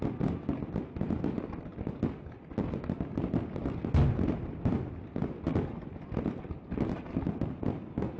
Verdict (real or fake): real